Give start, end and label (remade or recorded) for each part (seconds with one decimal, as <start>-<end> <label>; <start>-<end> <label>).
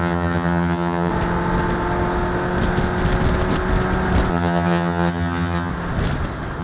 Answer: 0.0-1.1 remade; 1.1-4.3 recorded; 4.3-5.7 remade; 5.7-6.6 recorded